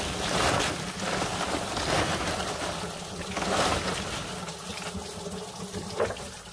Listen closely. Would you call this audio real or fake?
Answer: real